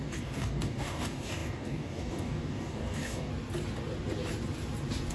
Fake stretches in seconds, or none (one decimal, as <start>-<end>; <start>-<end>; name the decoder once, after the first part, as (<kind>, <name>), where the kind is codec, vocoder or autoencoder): 0.0-3.3 (codec, DAC)